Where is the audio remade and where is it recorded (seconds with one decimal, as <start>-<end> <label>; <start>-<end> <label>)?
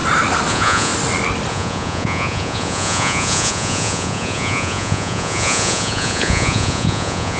0.0-0.5 recorded; 0.5-0.9 remade; 0.9-1.5 recorded; 1.5-7.4 remade